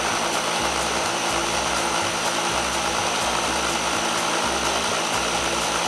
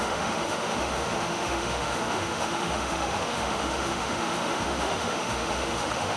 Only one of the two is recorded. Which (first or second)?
first